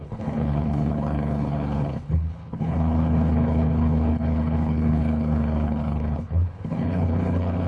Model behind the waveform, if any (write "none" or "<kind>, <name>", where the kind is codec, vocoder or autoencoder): codec, HILCodec